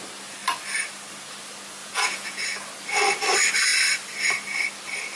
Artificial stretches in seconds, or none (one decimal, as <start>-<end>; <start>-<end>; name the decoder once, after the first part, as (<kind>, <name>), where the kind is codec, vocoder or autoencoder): 1.8-2.4 (vocoder, Vocos)